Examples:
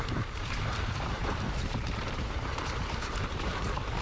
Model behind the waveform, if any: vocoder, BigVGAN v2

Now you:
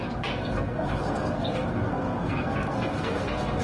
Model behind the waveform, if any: codec, SNAC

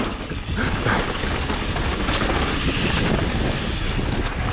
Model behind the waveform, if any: none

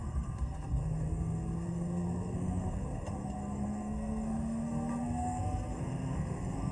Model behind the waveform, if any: codec, SNAC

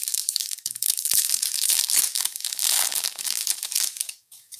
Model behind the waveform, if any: codec, DAC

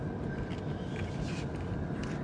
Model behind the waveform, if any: none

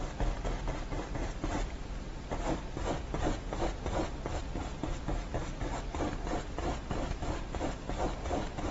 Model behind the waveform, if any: none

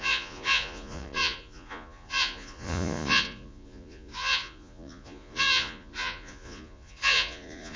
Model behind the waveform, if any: vocoder, Vocos